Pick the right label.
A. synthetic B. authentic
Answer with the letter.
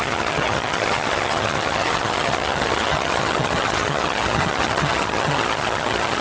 A